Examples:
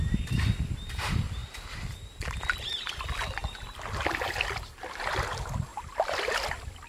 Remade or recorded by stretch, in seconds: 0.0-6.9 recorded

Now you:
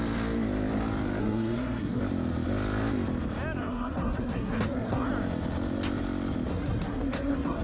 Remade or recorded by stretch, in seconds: 0.0-1.2 recorded; 1.2-2.0 remade; 2.0-3.6 recorded; 3.6-5.1 remade; 5.1-6.5 recorded; 6.5-7.6 remade

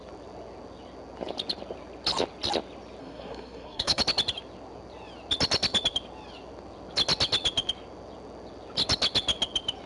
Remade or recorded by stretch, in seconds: 0.0-3.0 recorded; 3.0-4.0 remade; 4.0-9.9 recorded

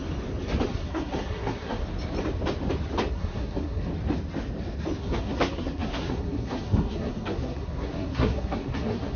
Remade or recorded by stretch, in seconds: 0.0-0.7 recorded; 0.7-1.8 remade; 1.8-3.1 recorded; 3.1-3.9 remade; 3.9-5.0 recorded; 5.0-9.2 remade

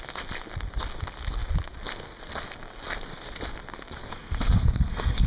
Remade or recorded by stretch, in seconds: 0.0-4.1 recorded; 4.1-5.3 remade

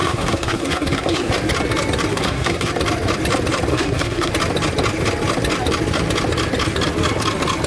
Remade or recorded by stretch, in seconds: 0.0-1.3 remade; 1.3-2.1 recorded; 2.1-2.7 remade; 2.7-3.7 recorded; 3.7-4.3 remade; 4.3-7.7 recorded

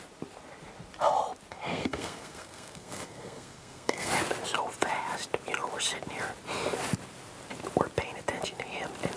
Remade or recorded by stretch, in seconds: 0.0-1.5 recorded; 1.5-4.1 remade; 4.1-9.2 recorded

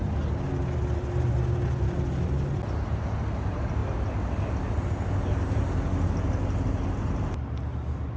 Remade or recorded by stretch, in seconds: 0.0-8.2 recorded